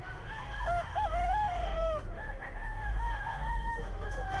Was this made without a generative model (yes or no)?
no